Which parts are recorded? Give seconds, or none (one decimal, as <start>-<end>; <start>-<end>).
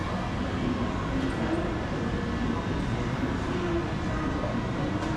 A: 0.0-5.2